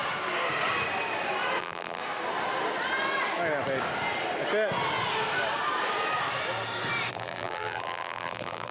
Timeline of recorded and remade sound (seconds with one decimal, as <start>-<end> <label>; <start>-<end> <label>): 0.0-1.6 recorded; 1.6-2.0 remade; 2.0-7.1 recorded; 7.1-8.7 remade